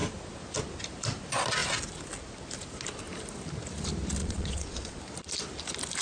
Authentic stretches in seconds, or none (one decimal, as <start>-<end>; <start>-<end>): 0.0-4.2; 5.0-6.0